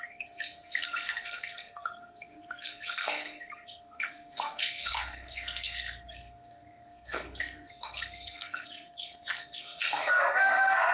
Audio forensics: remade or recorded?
remade